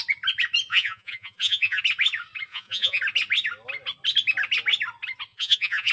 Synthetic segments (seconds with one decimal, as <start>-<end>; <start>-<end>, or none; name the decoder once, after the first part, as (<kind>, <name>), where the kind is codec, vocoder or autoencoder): 0.7-1.8 (vocoder, Vocos); 2.5-3.0; 5.3-5.9